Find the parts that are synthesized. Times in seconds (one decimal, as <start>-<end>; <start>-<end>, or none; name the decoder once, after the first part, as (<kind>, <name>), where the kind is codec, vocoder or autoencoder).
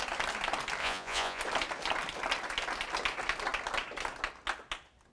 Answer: 0.8-1.4 (vocoder, Vocos)